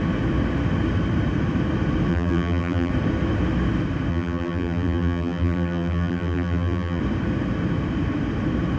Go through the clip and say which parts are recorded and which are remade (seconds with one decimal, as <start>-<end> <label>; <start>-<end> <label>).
0.0-2.1 recorded; 2.1-2.9 remade; 2.9-4.1 recorded; 4.1-7.0 remade; 7.0-8.8 recorded